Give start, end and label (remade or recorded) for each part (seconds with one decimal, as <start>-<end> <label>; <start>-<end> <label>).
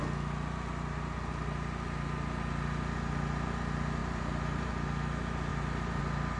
0.0-4.0 recorded; 4.0-4.7 remade; 4.7-5.5 recorded; 5.5-6.0 remade; 6.0-6.4 recorded